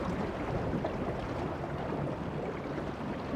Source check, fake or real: real